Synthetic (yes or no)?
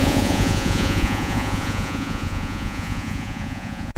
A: yes